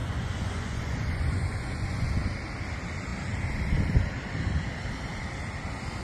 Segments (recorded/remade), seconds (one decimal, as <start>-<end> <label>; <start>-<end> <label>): 0.0-2.1 remade; 2.1-6.0 recorded